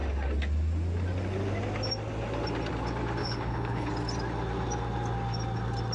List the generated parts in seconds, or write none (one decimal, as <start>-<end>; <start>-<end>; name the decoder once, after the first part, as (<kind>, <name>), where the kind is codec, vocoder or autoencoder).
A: 3.2-3.9 (codec, HILCodec)

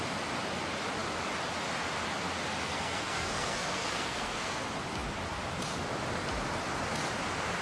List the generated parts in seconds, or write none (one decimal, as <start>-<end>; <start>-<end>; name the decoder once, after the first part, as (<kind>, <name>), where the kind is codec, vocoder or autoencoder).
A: 2.6-4.6 (codec, SNAC)